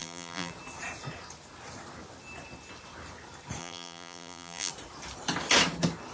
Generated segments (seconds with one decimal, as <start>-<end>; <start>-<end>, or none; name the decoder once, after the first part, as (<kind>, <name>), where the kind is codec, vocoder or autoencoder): 0.0-0.5 (vocoder, BigVGAN v2); 3.6-4.7